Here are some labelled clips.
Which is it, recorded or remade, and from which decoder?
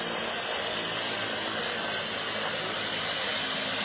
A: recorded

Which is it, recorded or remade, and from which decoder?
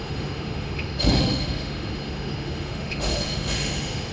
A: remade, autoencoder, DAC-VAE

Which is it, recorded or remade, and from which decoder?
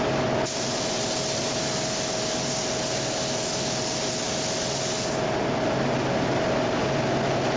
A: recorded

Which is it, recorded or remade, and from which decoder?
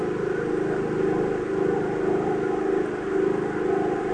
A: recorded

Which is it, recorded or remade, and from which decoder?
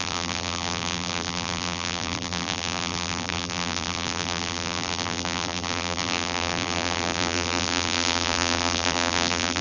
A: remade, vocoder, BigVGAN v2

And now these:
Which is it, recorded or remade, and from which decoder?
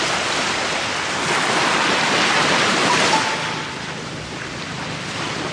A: recorded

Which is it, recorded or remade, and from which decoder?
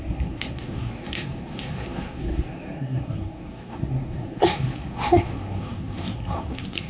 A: remade, codec, SNAC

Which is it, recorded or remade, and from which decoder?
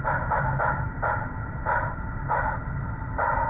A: recorded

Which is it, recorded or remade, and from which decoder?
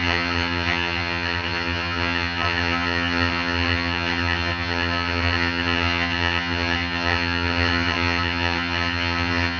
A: remade, vocoder, HiFi-GAN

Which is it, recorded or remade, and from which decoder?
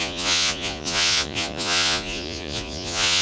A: remade, vocoder, Vocos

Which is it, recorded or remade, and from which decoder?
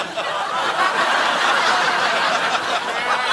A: recorded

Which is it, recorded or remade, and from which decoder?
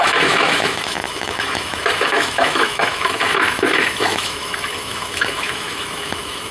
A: remade, autoencoder, DAC-VAE